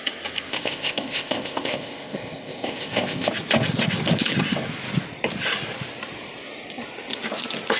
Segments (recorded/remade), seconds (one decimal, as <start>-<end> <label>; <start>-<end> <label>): 0.0-0.5 recorded; 0.5-3.3 remade; 3.3-7.8 recorded